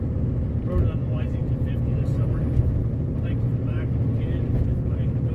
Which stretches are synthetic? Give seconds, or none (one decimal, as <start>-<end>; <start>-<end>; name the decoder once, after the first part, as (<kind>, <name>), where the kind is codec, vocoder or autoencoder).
none